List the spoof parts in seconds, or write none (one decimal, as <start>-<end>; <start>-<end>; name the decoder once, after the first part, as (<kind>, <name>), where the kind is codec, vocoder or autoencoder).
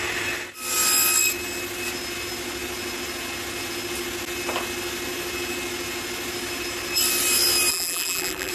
7.7-8.5 (vocoder, BigVGAN v2)